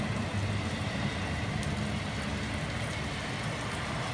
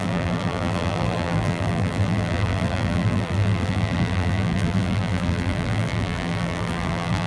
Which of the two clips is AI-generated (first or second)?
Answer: second